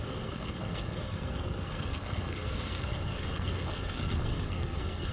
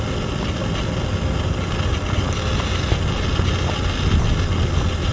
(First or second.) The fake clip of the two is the first